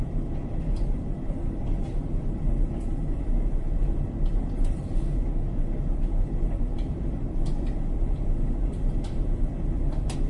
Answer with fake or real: fake